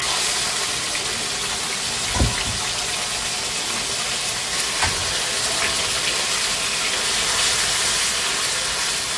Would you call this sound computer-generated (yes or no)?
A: no